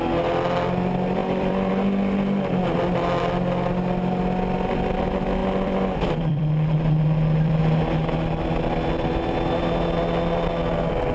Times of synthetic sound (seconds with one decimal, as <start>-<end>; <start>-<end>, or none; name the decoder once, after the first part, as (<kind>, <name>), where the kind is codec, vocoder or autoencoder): 1.2-1.7 (vocoder, BigVGAN v2); 5.4-7.6

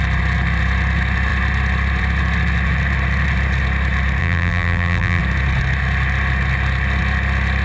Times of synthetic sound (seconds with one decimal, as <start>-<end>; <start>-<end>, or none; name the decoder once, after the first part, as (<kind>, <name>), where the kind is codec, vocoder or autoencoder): 4.2-5.2 (vocoder, BigVGAN v2)